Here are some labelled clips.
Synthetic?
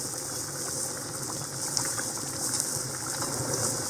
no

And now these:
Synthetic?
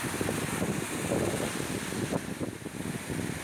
no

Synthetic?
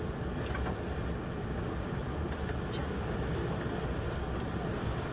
no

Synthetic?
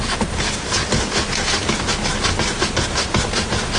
no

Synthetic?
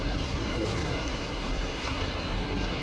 yes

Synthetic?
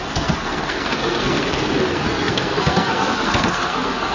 yes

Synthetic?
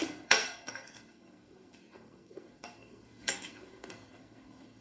yes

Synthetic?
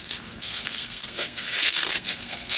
yes